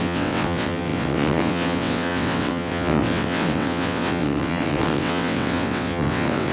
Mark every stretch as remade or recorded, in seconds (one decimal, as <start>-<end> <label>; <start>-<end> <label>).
0.0-6.5 remade